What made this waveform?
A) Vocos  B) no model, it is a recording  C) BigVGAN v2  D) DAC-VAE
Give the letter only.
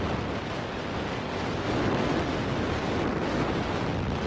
B